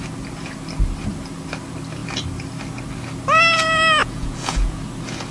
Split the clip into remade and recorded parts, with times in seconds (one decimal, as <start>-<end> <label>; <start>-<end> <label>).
0.0-4.0 recorded; 4.0-4.8 remade; 4.8-5.3 recorded